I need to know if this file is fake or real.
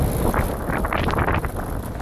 real